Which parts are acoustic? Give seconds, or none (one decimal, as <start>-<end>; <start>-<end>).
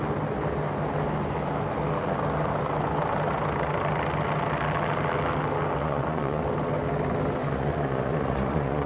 0.0-5.8; 6.4-7.4